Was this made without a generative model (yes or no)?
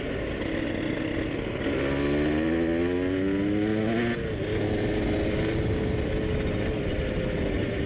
yes